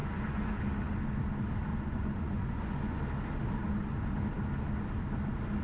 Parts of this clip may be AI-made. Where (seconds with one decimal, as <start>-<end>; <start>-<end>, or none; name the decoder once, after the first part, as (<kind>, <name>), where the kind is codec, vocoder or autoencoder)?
0.0-0.6 (vocoder, Vocos); 1.7-3.0